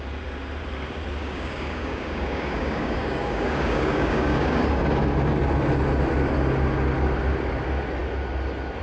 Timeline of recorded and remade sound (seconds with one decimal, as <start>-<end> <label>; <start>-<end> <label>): 0.0-1.2 recorded; 1.2-4.6 remade; 4.6-8.8 recorded